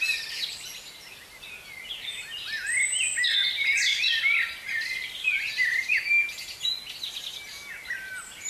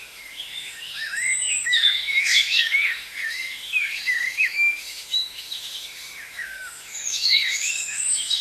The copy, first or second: second